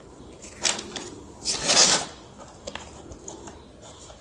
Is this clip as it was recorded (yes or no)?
yes